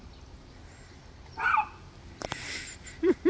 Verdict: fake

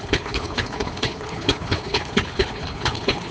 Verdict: fake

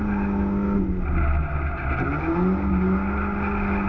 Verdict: real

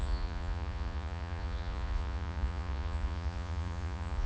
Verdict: fake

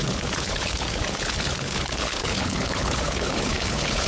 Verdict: fake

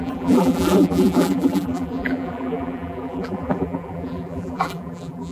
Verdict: fake